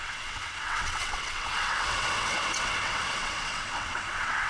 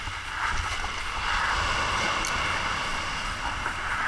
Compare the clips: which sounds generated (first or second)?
first